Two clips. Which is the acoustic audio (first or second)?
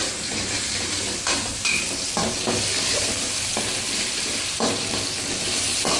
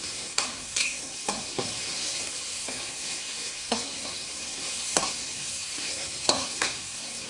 first